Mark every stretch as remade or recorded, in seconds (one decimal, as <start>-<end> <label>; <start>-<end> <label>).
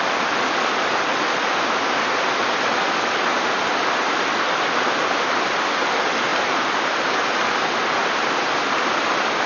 0.0-6.3 recorded; 6.3-7.3 remade; 7.3-8.0 recorded; 8.0-9.1 remade; 9.1-9.5 recorded